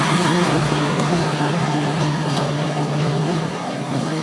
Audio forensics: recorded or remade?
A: remade